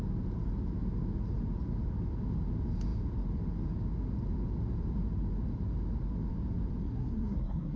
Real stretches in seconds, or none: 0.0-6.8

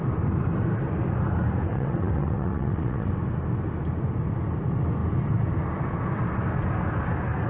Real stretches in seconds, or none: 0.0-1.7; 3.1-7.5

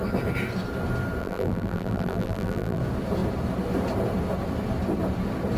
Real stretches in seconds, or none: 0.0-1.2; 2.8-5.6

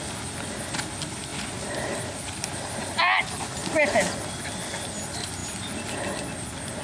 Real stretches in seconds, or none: 0.0-1.3; 2.8-5.4; 6.2-6.8